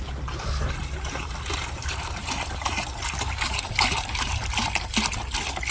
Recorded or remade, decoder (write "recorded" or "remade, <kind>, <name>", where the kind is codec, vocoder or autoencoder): recorded